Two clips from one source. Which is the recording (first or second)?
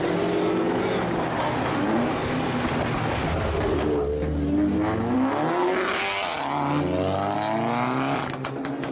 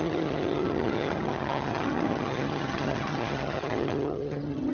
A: first